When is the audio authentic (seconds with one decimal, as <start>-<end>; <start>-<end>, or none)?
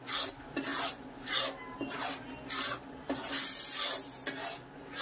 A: 0.0-5.0